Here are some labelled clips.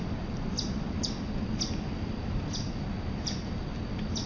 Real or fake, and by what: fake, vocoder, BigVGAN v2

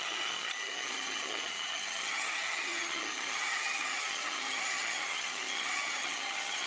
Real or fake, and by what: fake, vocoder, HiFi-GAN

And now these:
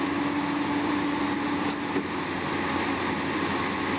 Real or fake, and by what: real